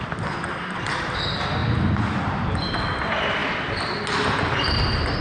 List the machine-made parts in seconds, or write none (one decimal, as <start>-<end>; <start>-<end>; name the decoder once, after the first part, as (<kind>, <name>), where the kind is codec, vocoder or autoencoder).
3.4-4.0 (vocoder, BigVGAN v2)